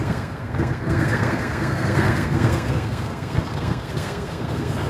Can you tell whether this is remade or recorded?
remade